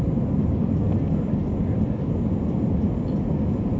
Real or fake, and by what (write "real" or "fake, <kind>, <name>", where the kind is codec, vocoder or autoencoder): real